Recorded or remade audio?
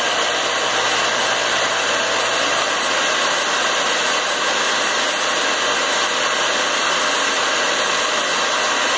recorded